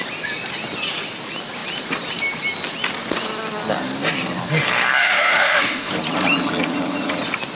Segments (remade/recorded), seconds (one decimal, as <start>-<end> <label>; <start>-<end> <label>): 0.0-5.0 recorded; 5.0-5.9 remade; 5.9-7.5 recorded